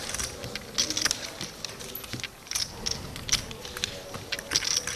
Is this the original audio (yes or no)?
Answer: yes